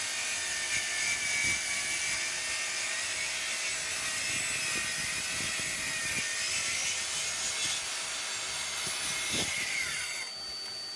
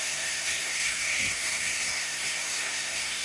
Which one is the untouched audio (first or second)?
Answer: first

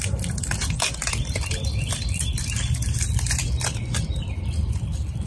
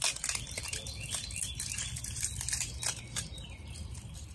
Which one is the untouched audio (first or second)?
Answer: second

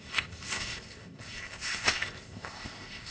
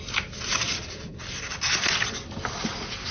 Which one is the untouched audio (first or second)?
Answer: second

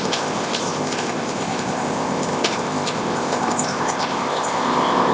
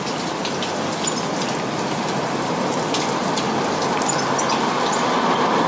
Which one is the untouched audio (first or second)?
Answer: second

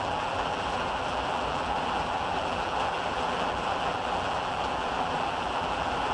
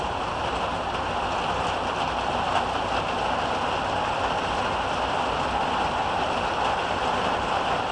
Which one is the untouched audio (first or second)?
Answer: second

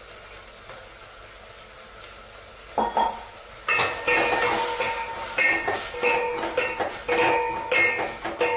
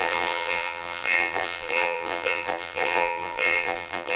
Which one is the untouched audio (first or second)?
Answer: first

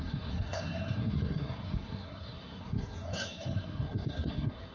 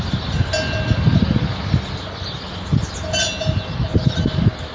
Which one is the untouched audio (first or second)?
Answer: second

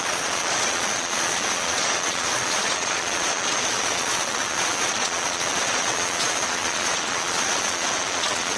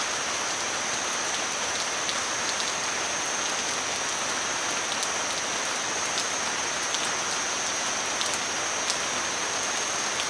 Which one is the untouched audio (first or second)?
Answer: second